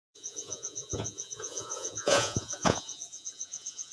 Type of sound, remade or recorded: remade